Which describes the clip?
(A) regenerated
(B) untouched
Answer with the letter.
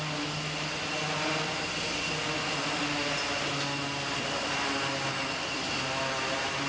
B